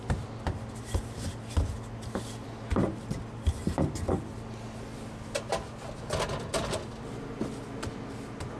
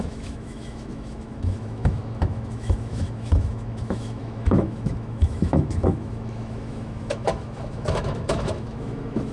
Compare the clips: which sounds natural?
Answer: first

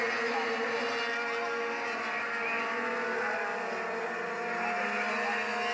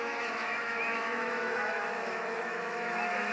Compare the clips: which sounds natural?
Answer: first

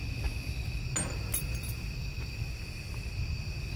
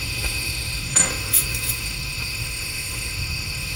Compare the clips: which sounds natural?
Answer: first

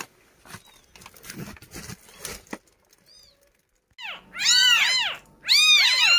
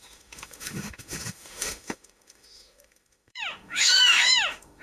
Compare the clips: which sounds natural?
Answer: first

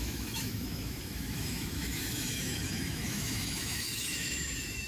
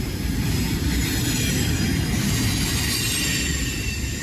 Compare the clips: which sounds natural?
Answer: second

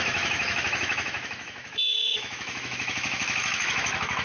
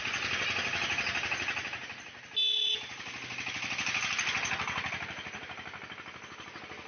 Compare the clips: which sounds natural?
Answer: second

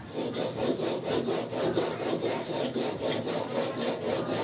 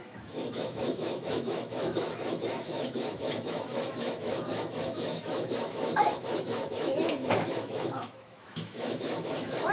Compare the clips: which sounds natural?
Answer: first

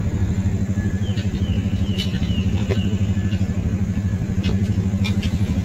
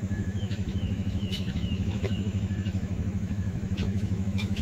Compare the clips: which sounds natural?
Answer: first